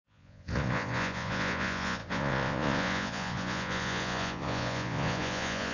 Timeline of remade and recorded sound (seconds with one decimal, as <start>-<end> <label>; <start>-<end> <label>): 0.0-5.7 remade